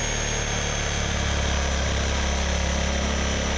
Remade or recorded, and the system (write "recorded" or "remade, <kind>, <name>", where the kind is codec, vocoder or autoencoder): recorded